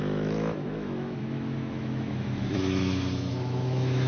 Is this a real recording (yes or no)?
no